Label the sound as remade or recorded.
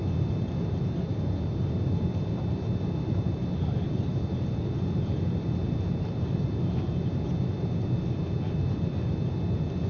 recorded